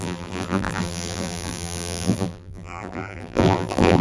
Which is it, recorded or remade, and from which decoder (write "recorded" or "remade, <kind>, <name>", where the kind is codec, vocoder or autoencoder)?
remade, vocoder, BigVGAN v2